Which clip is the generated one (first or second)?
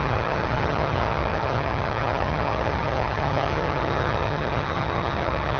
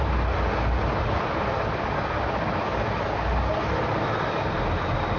first